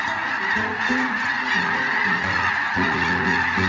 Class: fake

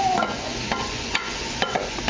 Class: fake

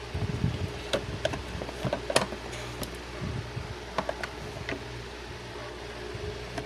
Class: real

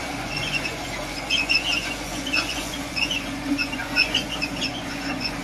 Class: fake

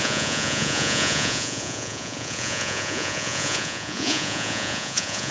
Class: fake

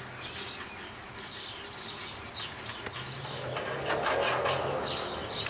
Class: real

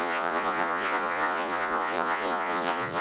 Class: fake